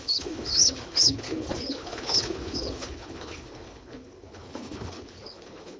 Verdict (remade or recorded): remade